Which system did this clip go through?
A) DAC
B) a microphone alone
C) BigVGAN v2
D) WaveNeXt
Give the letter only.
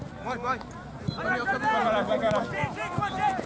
B